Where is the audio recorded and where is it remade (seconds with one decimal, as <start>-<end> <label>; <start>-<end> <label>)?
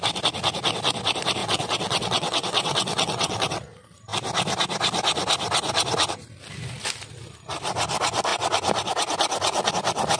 0.0-1.4 recorded; 1.4-3.6 remade; 3.6-10.2 recorded